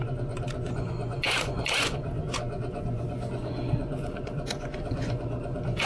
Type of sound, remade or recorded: remade